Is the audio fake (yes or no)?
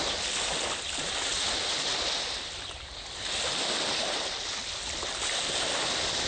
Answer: no